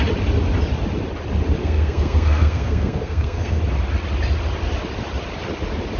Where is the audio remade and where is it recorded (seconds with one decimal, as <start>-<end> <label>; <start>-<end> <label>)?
0.0-1.6 recorded; 1.6-3.6 remade; 3.6-6.0 recorded